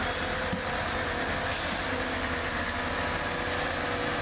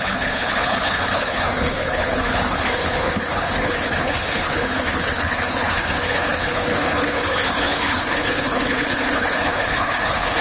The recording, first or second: first